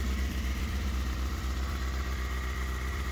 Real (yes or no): no